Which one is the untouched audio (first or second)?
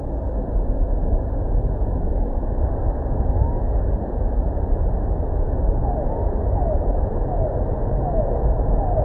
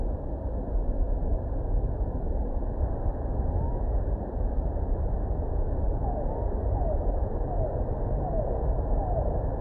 first